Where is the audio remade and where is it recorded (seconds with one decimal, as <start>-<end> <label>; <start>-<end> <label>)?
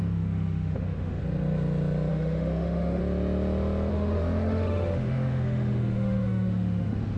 0.0-1.2 remade; 1.2-2.1 recorded; 2.1-3.0 remade; 3.0-3.9 recorded; 3.9-7.2 remade